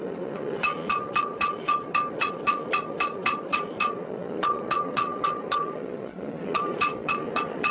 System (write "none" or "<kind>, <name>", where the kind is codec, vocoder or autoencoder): vocoder, Vocos